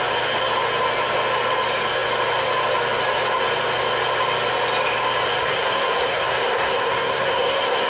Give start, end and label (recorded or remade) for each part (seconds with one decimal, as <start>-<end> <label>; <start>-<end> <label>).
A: 0.0-5.4 recorded; 5.4-7.9 remade